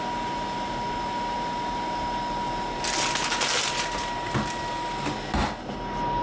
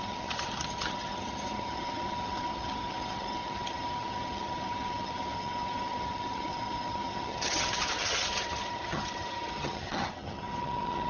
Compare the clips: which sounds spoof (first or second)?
second